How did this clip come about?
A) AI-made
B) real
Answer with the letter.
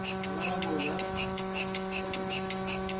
A